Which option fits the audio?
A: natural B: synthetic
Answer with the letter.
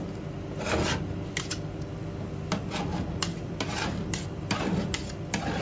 A